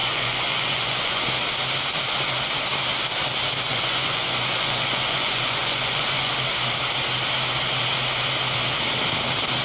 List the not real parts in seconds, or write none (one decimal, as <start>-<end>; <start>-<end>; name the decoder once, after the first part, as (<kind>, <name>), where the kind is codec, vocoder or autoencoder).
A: 0.0-1.2 (vocoder, Vocos); 3.7-6.3